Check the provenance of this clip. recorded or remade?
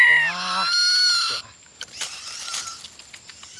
recorded